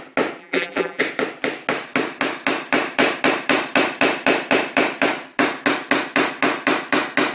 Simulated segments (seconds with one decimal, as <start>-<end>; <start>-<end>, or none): 0.4-1.0